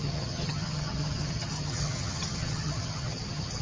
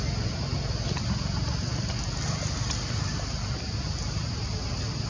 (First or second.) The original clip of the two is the second